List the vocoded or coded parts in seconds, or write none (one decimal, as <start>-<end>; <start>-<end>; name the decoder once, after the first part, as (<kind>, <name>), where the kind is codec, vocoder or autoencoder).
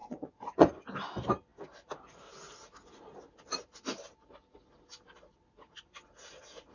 0.0-0.7 (vocoder, Vocos)